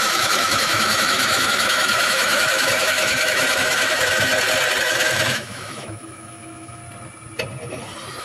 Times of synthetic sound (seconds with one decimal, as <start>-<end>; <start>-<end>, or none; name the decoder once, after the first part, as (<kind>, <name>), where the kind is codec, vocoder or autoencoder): 0.0-4.3 (autoencoder, DAC-VAE); 4.8-6.8